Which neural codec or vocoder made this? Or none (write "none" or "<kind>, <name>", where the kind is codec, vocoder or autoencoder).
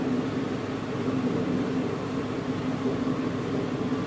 none